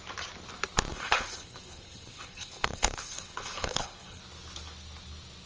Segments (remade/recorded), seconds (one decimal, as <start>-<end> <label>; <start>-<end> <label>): 0.0-0.9 recorded; 0.9-4.2 remade; 4.2-5.5 recorded